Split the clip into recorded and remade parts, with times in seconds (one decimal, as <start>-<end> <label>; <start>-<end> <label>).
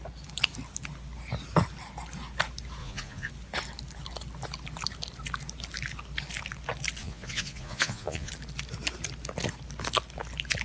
0.0-2.8 recorded; 2.8-3.3 remade; 3.3-7.0 recorded; 7.0-8.3 remade; 8.3-10.6 recorded